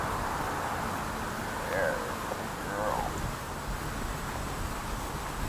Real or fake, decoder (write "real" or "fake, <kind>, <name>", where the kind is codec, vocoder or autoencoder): real